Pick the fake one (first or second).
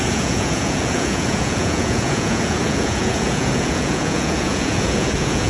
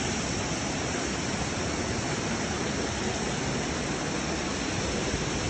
first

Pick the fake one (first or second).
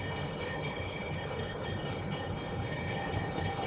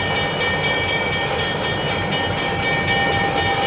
first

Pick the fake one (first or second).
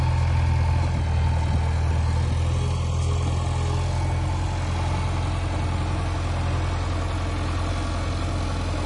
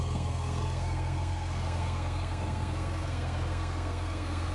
second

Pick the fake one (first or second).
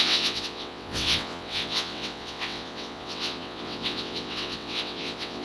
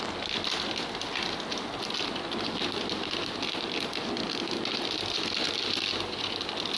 first